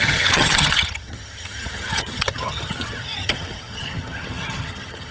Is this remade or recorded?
remade